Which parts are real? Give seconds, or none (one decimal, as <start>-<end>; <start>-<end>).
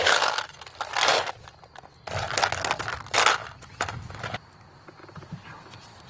0.0-5.0